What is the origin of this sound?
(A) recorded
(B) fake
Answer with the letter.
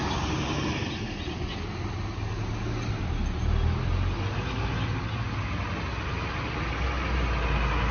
A